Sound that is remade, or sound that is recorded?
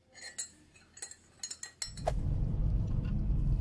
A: recorded